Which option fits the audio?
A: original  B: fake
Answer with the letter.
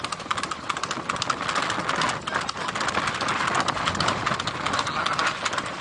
A